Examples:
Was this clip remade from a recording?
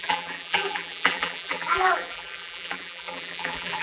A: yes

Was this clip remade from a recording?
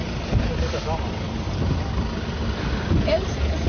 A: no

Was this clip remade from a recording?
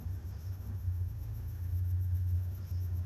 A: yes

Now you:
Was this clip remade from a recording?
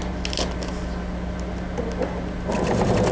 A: no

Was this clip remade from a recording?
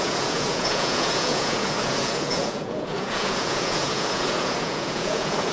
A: yes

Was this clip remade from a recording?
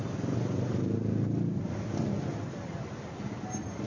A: no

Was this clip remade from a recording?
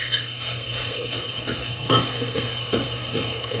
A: yes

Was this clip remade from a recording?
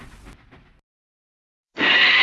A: no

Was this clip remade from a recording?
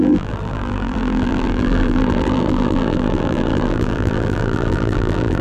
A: yes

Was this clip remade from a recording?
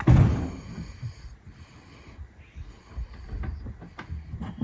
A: no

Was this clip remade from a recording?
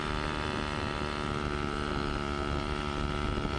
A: no